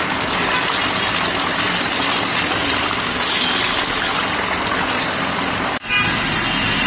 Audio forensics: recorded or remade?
recorded